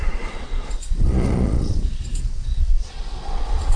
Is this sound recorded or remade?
remade